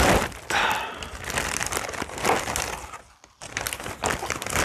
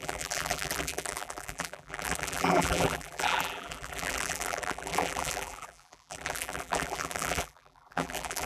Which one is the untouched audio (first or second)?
first